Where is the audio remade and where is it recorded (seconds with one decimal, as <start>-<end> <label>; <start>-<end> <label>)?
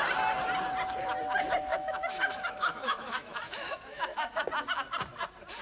0.0-1.7 recorded; 1.7-4.4 remade; 4.4-5.6 recorded